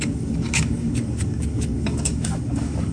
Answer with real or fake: fake